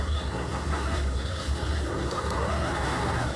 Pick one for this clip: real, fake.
fake